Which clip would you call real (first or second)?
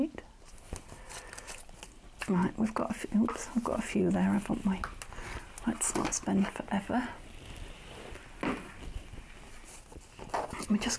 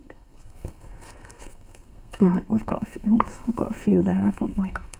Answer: first